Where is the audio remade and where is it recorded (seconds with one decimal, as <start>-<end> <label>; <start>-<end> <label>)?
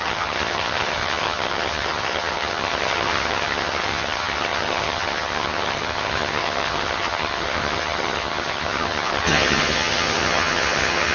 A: 0.0-11.1 remade